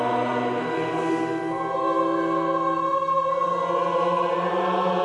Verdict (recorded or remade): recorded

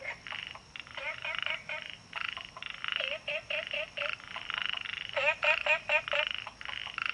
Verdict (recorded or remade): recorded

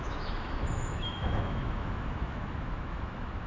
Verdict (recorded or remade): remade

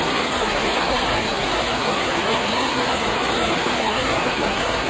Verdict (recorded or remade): remade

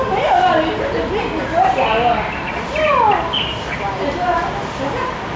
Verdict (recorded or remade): recorded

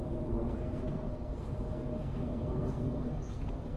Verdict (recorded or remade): remade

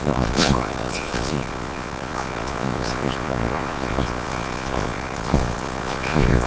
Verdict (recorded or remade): remade